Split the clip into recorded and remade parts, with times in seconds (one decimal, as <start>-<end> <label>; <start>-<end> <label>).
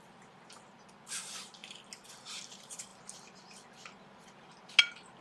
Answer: 0.0-5.2 recorded